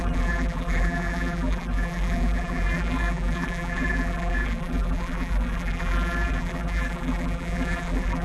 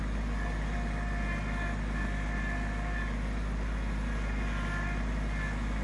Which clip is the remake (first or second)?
first